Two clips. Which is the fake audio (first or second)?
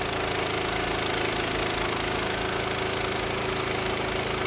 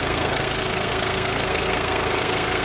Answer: second